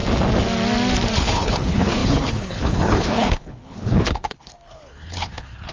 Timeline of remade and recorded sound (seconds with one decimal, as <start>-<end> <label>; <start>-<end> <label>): 0.0-1.2 recorded; 1.2-5.7 remade